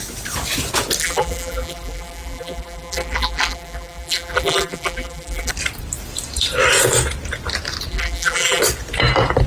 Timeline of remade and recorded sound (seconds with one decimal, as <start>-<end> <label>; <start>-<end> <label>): 0.0-1.0 recorded; 1.0-5.5 remade; 5.5-7.9 recorded; 7.9-8.6 remade; 8.6-9.5 recorded